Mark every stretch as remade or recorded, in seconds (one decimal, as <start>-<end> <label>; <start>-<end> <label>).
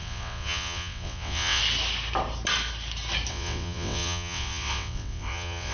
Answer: 0.0-1.6 remade; 1.6-3.3 recorded; 3.3-5.7 remade